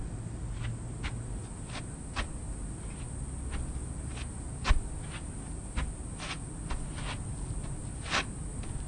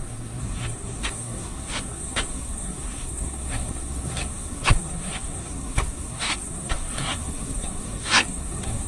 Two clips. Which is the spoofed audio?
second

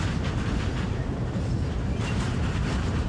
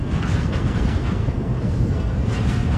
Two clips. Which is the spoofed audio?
second